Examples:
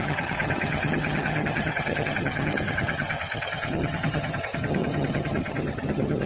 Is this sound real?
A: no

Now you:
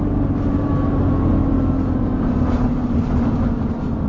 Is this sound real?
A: yes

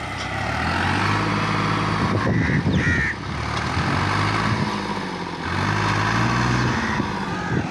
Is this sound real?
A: yes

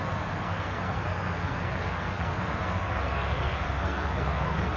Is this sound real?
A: no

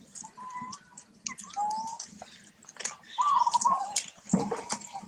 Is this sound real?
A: yes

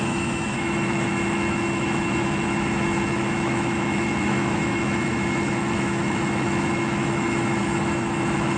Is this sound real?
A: no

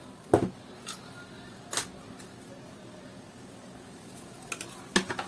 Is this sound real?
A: yes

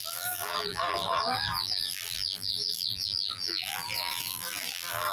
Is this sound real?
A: no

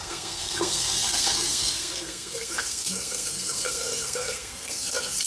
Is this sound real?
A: no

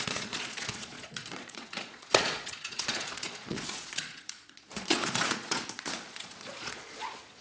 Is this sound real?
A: no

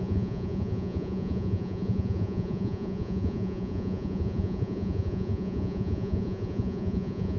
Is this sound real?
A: no